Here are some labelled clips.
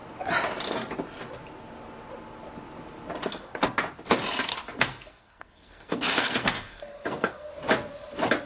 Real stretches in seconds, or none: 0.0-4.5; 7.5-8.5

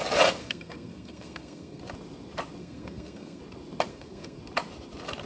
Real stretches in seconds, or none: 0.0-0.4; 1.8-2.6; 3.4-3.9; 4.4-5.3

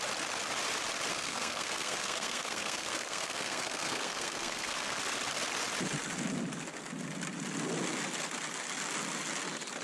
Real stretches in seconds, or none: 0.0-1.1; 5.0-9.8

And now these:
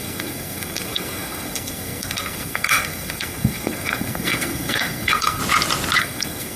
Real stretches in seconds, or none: 5.4-6.0

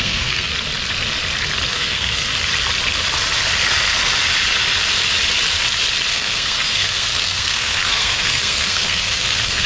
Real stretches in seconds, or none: 0.5-1.7; 2.3-6.1